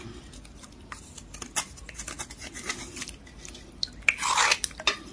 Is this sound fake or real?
real